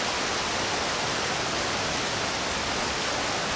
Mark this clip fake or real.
real